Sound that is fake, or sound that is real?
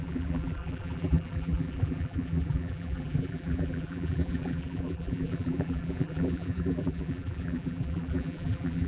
fake